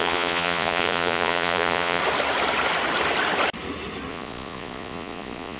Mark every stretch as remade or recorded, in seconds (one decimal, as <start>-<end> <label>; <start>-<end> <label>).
0.0-2.0 remade; 2.0-4.1 recorded; 4.1-5.6 remade